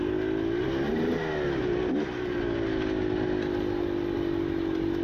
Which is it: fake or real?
real